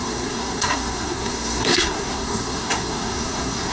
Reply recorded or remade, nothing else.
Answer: remade